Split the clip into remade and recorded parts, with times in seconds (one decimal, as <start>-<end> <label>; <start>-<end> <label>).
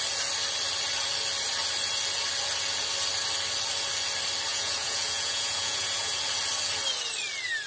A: 0.0-4.5 recorded; 4.5-6.1 remade; 6.1-7.7 recorded